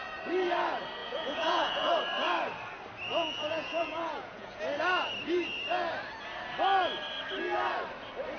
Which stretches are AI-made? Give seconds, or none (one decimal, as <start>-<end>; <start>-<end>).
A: 1.0-1.9; 3.1-4.6